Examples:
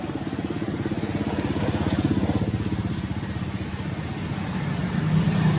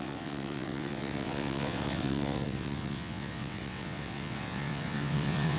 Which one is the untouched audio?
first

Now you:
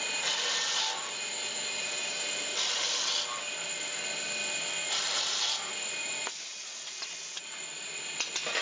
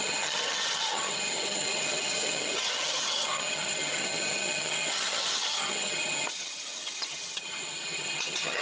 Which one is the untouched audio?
first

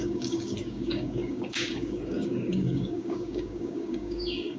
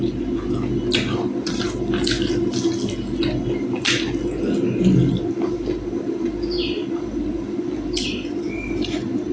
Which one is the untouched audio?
second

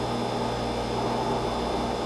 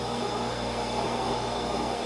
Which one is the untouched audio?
first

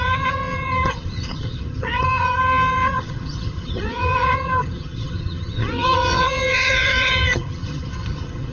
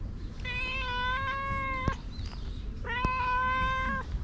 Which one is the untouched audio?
second